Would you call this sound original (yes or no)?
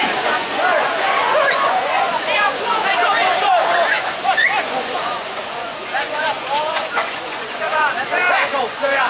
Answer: no